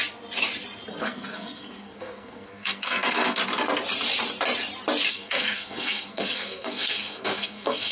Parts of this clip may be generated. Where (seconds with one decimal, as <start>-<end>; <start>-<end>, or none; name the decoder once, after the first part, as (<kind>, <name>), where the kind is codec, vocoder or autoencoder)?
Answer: 1.0-3.4 (codec, SNAC); 5.1-7.9